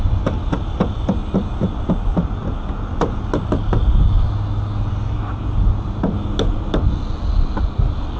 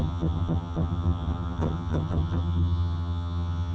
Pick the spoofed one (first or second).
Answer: second